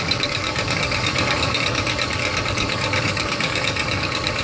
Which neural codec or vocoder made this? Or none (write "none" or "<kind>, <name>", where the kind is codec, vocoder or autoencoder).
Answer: codec, DAC